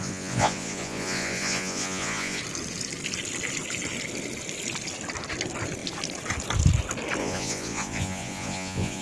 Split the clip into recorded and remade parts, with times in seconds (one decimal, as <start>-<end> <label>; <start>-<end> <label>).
0.0-2.4 remade; 2.4-7.2 recorded; 7.2-9.0 remade